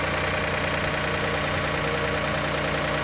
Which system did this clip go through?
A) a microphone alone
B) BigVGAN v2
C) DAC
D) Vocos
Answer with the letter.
A